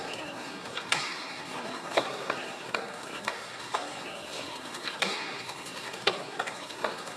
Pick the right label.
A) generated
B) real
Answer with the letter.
A